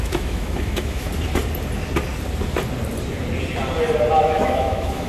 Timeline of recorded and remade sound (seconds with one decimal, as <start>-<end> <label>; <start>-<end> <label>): 0.0-1.1 remade; 1.1-4.2 recorded; 4.2-5.1 remade